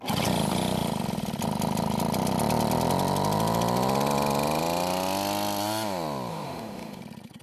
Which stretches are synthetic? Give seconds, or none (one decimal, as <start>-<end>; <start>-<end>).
6.3-7.0